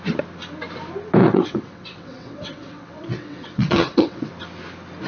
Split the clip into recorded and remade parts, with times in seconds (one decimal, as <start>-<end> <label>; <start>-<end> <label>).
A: 0.0-1.2 recorded; 1.2-4.3 remade; 4.3-5.1 recorded

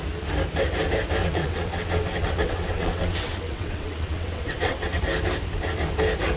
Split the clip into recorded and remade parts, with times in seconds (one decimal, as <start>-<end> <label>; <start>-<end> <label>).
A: 0.0-1.2 recorded; 1.2-5.0 remade; 5.0-6.4 recorded

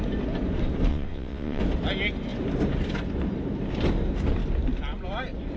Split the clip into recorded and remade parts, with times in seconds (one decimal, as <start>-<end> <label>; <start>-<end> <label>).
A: 0.0-0.9 recorded; 0.9-1.6 remade; 1.6-5.6 recorded